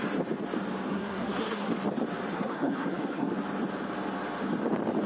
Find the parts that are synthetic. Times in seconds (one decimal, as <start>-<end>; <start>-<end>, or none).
0.9-1.7; 2.3-3.3